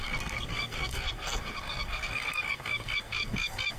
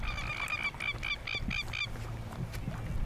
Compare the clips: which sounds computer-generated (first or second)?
first